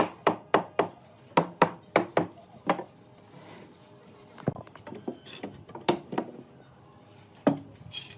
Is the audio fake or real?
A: real